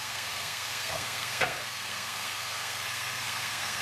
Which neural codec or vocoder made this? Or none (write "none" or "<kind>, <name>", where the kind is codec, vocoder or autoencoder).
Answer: codec, SNAC